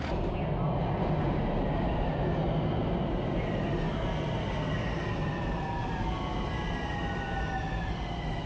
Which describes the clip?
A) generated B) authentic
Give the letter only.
B